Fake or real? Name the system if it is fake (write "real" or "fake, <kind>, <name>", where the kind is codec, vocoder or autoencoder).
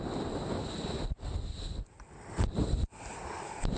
real